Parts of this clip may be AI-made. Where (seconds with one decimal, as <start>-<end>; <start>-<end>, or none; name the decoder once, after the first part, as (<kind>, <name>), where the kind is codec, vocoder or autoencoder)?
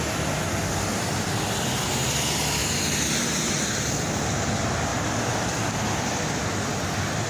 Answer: none